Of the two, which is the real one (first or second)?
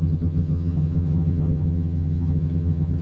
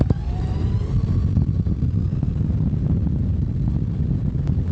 second